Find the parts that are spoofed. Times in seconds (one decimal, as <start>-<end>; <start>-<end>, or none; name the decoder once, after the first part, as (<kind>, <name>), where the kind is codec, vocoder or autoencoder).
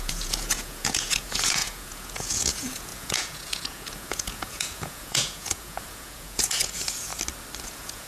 0.0-7.1 (vocoder, Vocos); 7.6-8.1